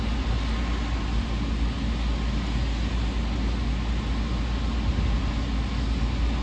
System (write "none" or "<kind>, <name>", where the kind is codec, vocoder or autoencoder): none